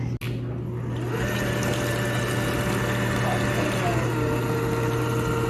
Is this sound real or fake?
real